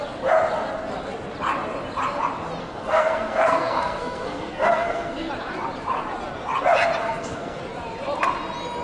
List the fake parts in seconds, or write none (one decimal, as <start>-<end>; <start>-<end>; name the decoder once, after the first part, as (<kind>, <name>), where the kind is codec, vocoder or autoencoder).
2.6-5.3 (codec, SNAC); 7.0-7.6